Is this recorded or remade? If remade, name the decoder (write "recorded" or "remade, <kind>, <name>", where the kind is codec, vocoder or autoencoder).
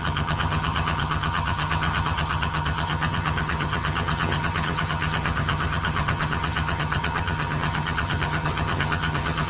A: remade, vocoder, HiFi-GAN